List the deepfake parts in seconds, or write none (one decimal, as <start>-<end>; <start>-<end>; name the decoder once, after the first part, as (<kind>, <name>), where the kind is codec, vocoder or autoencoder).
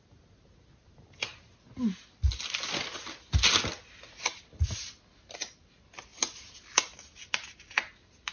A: 0.8-1.5 (vocoder, BigVGAN v2)